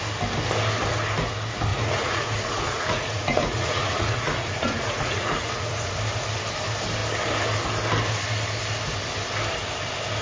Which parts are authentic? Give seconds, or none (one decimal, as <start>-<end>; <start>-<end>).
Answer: 0.0-1.7; 6.0-10.2